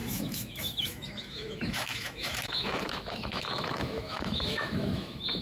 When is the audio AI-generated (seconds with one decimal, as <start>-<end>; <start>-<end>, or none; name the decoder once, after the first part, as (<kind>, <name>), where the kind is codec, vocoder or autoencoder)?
0.0-5.4 (autoencoder, DAC-VAE)